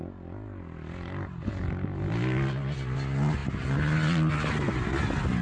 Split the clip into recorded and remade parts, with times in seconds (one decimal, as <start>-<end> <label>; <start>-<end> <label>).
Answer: 0.0-5.4 recorded